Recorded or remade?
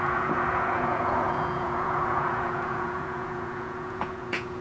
remade